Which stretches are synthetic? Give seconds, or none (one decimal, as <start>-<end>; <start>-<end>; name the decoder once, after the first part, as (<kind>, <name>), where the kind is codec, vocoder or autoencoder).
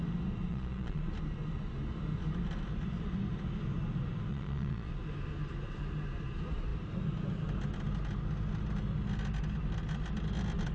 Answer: 0.5-1.1 (vocoder, Vocos); 4.3-4.9